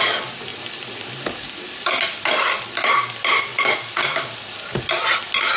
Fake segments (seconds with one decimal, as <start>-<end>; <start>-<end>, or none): none